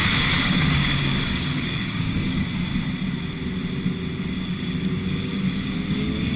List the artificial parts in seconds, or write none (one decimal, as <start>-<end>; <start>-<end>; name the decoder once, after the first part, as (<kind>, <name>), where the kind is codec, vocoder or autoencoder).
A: 0.0-2.7 (codec, DAC); 4.3-6.4